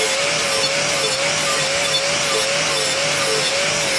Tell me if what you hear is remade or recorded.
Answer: recorded